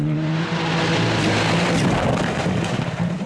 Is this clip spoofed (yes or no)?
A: no